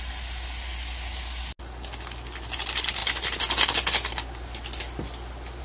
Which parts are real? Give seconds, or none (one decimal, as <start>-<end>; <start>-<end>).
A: 0.0-5.6

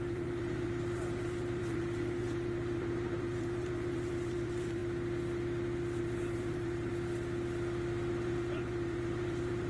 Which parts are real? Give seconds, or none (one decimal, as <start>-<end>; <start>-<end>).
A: 4.8-6.0; 6.9-8.1

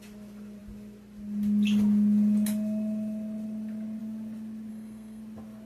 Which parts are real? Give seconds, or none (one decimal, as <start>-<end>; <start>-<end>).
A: 0.0-4.7; 5.2-5.7